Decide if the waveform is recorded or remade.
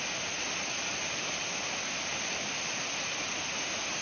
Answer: recorded